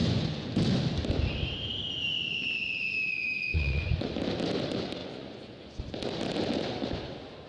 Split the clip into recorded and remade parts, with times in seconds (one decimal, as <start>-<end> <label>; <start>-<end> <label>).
0.0-0.6 remade; 0.6-3.5 recorded; 3.5-4.1 remade; 4.1-5.0 recorded; 5.0-5.8 remade; 5.8-7.5 recorded